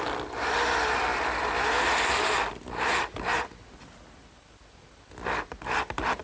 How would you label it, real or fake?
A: real